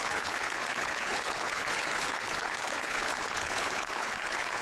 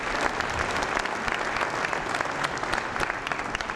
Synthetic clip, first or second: first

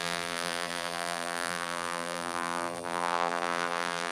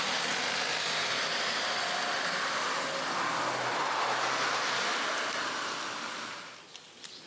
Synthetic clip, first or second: first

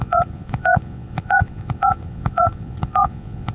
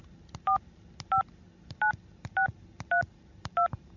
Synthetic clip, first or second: first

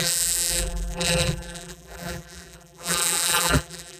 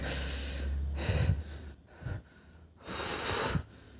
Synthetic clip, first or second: first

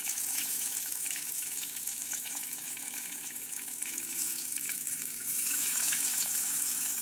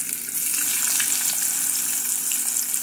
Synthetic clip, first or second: first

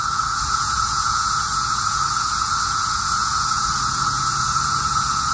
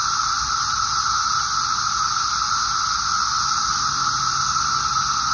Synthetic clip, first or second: first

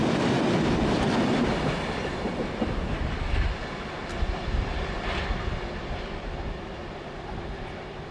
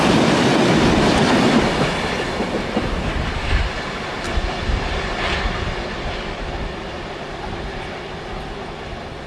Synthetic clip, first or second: second